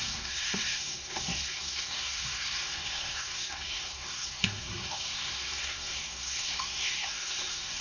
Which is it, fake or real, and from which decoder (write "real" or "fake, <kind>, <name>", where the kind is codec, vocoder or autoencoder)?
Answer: fake, codec, SNAC